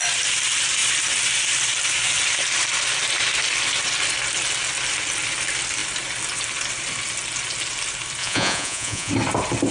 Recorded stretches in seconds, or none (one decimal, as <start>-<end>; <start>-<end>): 0.0-8.2; 9.1-9.7